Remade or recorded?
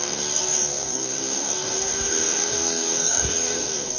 remade